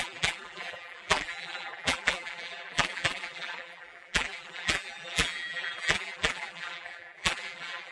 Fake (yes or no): yes